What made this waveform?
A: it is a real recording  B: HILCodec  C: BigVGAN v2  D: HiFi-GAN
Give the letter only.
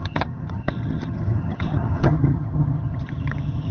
D